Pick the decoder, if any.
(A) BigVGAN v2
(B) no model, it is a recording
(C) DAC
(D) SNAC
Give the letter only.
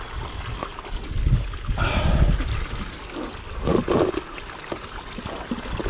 B